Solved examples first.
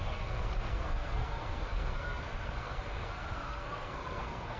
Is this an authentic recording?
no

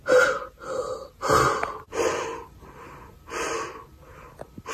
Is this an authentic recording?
yes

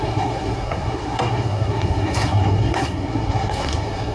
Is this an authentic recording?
no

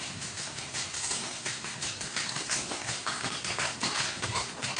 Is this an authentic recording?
no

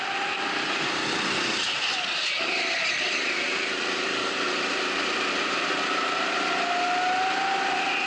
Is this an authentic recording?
yes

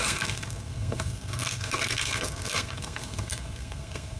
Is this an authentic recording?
no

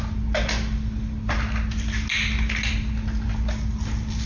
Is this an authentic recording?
yes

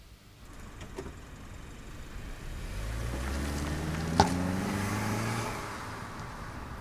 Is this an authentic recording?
yes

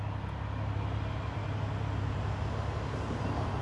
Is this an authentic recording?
yes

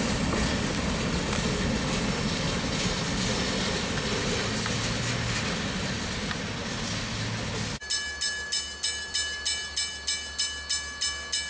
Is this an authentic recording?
yes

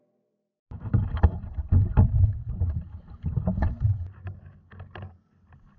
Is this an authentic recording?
yes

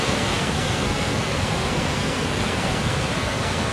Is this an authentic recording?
no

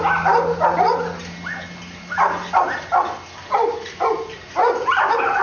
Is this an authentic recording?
yes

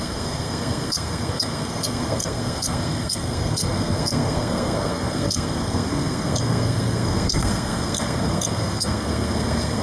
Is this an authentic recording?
no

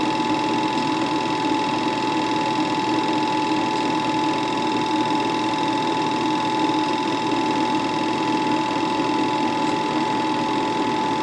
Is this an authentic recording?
yes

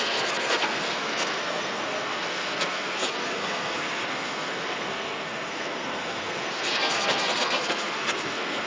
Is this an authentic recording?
no